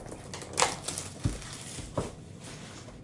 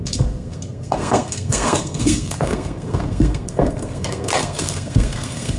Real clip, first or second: first